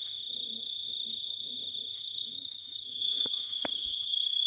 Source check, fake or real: fake